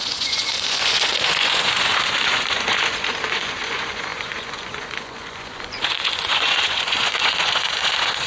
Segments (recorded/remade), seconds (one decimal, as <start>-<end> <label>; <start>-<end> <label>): 0.0-8.3 remade